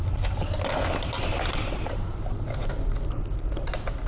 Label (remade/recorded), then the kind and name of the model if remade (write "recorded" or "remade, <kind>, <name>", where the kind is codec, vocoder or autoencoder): recorded